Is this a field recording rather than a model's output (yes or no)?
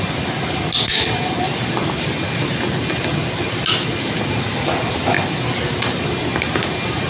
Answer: yes